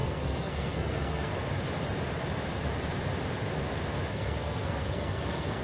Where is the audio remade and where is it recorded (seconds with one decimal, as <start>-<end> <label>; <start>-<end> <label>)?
0.0-1.3 remade; 1.3-4.1 recorded; 4.1-5.6 remade